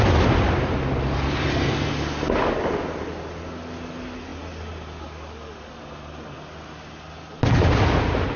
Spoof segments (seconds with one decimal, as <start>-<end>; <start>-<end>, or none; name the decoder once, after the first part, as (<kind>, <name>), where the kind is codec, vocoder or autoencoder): none